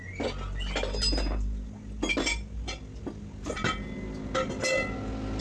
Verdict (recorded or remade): recorded